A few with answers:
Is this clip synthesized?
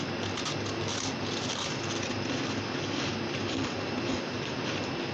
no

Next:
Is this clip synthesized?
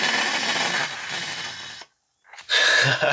no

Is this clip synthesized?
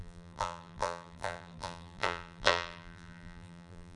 yes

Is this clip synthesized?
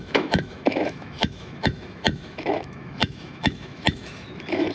yes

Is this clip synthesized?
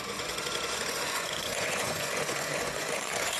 yes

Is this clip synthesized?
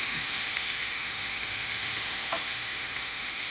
yes